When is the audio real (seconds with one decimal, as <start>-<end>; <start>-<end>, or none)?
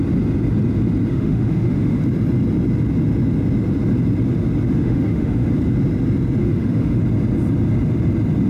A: 0.0-1.1; 2.0-4.8; 5.5-6.4; 7.0-8.5